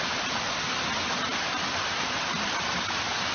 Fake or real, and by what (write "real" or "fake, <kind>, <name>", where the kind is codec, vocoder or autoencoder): real